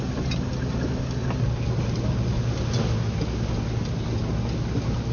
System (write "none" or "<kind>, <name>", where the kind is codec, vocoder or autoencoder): none